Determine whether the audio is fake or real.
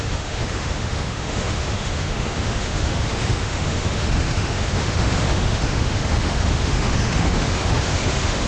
fake